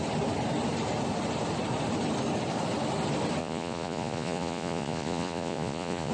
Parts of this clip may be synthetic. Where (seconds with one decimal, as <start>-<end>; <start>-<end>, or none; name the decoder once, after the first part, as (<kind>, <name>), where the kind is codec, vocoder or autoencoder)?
3.4-6.1 (vocoder, Vocos)